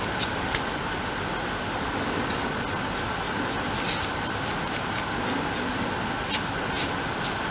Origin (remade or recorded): recorded